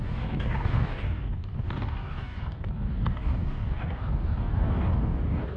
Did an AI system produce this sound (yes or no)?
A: yes